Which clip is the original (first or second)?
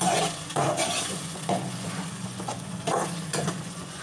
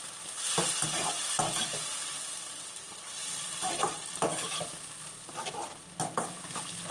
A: second